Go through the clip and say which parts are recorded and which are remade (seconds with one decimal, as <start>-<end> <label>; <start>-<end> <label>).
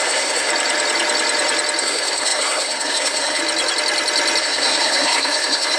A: 0.0-0.5 remade; 0.5-1.8 recorded; 1.8-3.4 remade; 3.4-4.4 recorded; 4.4-5.8 remade